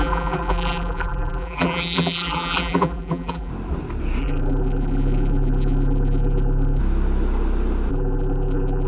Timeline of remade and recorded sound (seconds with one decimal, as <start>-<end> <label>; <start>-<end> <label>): 0.0-3.5 remade; 3.5-4.2 recorded; 4.2-6.8 remade; 6.8-7.9 recorded; 7.9-8.9 remade